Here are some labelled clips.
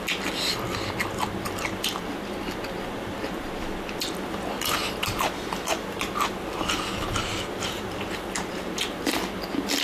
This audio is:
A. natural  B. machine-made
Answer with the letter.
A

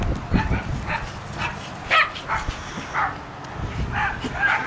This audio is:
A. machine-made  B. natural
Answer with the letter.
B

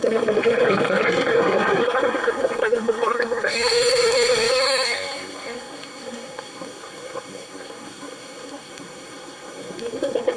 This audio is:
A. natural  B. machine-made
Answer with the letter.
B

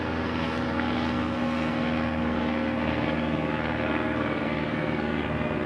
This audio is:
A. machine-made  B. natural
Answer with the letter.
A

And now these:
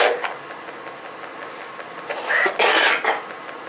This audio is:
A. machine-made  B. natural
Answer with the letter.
B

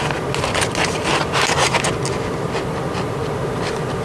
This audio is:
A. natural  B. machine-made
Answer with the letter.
A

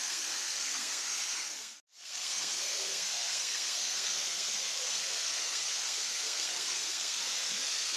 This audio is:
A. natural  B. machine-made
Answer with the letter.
B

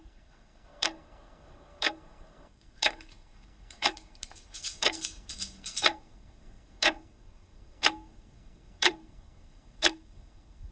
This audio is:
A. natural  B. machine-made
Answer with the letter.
B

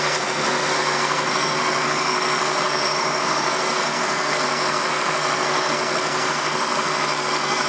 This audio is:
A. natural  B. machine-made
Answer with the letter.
B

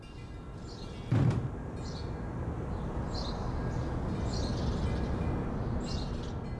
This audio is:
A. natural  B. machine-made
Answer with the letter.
A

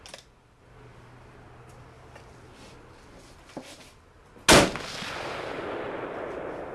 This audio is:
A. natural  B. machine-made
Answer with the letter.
A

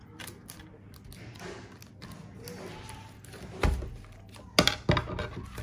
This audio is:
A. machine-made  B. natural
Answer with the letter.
B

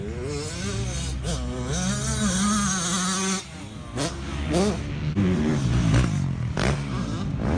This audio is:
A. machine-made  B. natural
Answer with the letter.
B